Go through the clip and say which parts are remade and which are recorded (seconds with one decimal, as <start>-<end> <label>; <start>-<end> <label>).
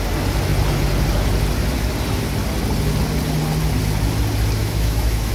0.0-4.6 recorded; 4.6-5.3 remade